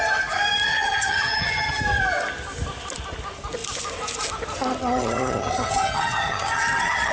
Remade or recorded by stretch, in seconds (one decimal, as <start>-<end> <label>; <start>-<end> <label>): 0.0-0.7 recorded; 0.7-1.8 remade; 1.8-4.8 recorded; 4.8-7.1 remade